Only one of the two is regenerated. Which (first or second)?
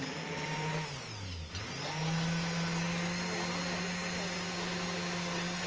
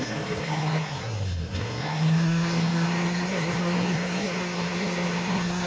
second